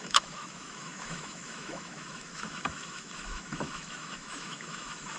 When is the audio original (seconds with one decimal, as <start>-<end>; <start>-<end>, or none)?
none